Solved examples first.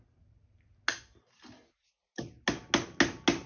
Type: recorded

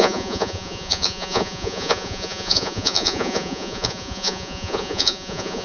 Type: remade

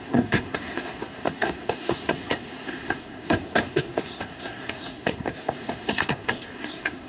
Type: remade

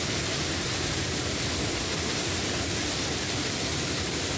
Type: remade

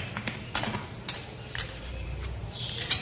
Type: remade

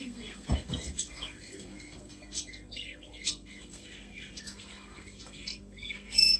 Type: remade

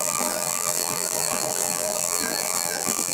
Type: remade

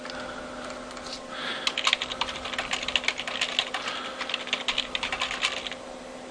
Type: recorded